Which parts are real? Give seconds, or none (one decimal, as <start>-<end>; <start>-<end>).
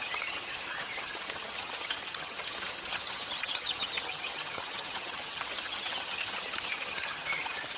none